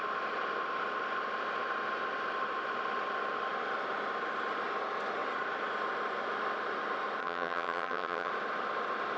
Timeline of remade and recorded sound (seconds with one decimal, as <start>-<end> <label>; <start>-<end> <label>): 0.0-7.2 recorded; 7.2-8.3 remade; 8.3-9.2 recorded